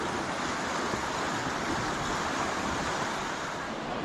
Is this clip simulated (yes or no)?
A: no